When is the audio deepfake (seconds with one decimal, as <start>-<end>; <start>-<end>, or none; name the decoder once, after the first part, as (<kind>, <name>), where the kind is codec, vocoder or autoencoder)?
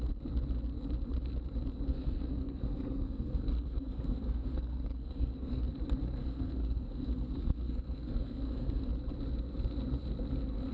1.9-5.6 (codec, SNAC); 6.2-8.9